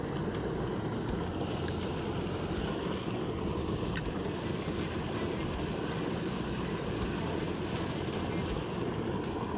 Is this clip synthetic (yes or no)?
no